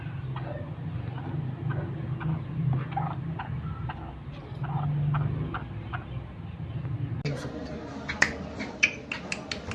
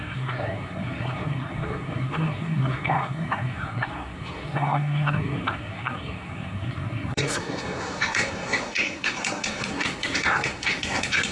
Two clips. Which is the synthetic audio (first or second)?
second